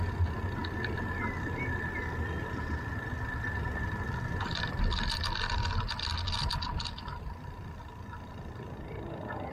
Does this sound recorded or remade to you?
recorded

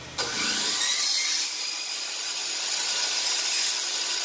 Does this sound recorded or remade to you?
recorded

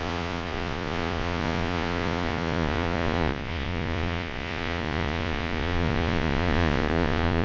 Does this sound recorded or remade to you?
remade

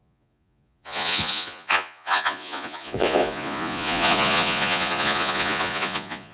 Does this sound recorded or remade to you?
remade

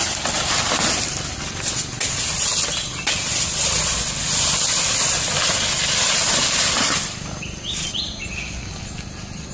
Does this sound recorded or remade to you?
recorded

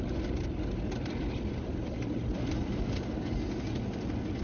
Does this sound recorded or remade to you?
recorded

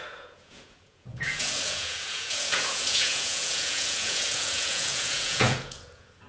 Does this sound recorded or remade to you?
remade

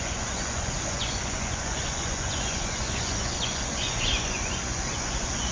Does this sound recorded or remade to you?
remade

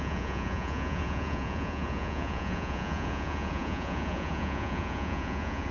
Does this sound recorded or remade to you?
remade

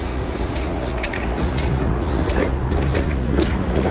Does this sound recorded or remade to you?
remade